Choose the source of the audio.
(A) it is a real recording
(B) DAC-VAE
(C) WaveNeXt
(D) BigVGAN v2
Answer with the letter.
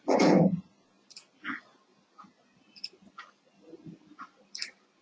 D